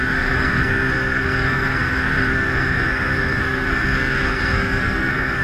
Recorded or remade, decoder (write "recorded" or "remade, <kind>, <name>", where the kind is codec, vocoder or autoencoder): remade, codec, SNAC